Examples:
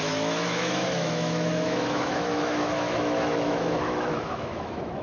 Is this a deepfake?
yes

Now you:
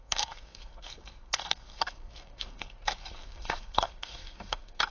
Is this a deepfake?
yes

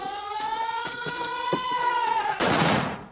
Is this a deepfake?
yes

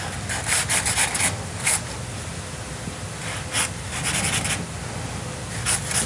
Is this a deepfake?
no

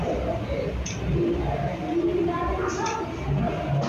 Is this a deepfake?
no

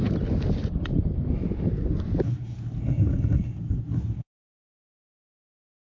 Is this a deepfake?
no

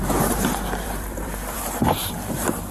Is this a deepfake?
yes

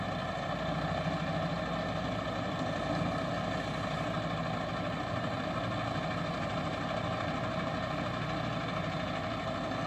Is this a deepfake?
no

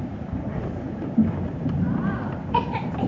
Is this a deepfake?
yes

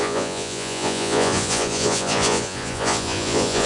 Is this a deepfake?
yes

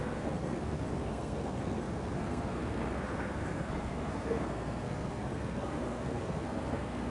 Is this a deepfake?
yes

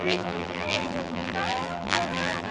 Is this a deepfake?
yes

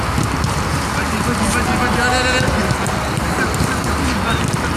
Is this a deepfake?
no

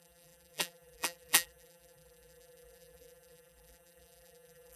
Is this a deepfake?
yes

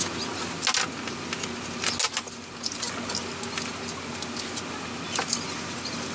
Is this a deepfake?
no